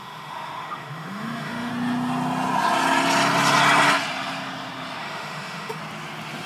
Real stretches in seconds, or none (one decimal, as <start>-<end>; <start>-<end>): 1.7-5.0; 5.8-6.5